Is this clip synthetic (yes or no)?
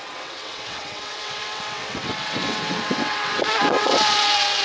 yes